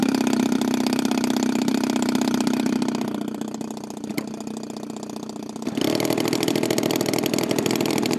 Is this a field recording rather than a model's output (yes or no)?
yes